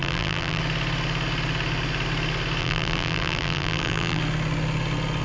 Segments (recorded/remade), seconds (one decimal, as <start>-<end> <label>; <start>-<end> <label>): 0.0-0.6 remade; 0.6-2.6 recorded; 2.6-4.2 remade; 4.2-5.2 recorded